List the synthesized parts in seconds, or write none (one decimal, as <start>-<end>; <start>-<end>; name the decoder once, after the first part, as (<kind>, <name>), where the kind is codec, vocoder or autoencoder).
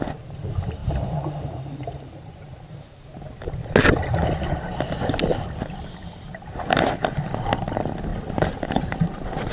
0.8-2.7 (vocoder, BigVGAN v2); 8.1-9.5